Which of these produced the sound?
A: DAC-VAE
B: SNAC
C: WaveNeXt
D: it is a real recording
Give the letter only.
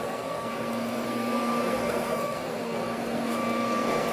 B